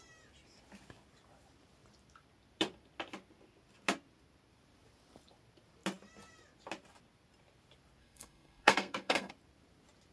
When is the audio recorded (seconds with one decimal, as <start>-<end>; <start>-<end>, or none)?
0.0-8.0; 9.3-10.1